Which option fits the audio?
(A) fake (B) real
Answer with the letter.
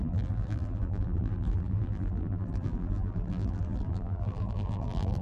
A